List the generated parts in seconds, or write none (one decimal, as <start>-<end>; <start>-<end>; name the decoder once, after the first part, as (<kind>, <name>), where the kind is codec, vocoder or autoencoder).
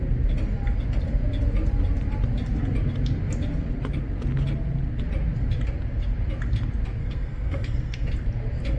7.0-8.1 (codec, SNAC)